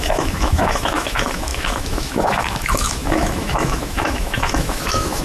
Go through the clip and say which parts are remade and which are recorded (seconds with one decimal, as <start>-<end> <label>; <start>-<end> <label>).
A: 0.0-5.2 remade